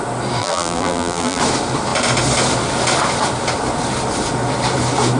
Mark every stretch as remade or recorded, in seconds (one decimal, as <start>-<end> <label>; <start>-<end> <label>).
0.0-0.4 recorded; 0.4-1.4 remade; 1.4-5.2 recorded